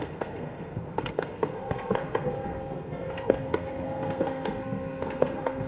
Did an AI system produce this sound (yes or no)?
yes